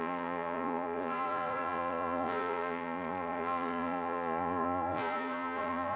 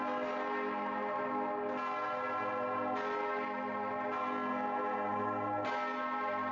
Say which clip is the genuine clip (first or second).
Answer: second